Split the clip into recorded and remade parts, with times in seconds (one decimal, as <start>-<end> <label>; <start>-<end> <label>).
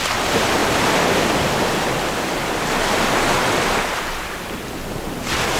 0.0-5.6 recorded